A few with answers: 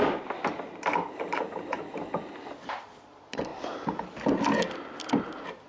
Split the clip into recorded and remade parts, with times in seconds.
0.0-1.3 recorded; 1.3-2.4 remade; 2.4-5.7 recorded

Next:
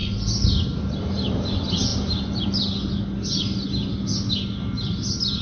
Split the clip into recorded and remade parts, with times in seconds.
0.0-5.4 recorded

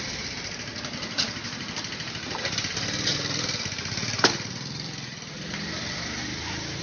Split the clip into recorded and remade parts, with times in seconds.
0.0-6.8 remade

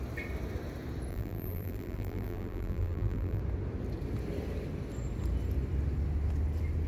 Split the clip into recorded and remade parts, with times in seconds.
0.0-1.1 recorded; 1.1-3.4 remade; 3.4-6.9 recorded

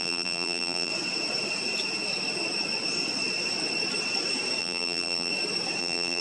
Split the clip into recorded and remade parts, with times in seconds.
0.0-0.9 remade; 0.9-4.6 recorded; 4.6-5.3 remade; 5.3-5.8 recorded; 5.8-6.2 remade

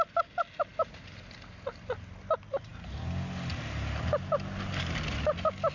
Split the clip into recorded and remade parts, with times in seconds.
0.0-5.7 recorded

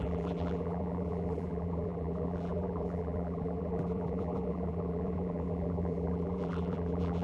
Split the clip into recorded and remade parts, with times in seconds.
0.0-7.2 remade